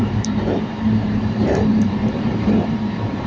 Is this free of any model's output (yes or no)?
no